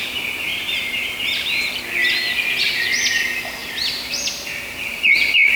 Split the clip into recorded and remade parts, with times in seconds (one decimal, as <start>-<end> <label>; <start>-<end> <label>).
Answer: 0.0-0.5 recorded; 0.5-1.1 remade; 1.1-3.6 recorded; 3.6-5.0 remade; 5.0-5.6 recorded